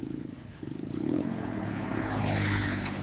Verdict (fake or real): fake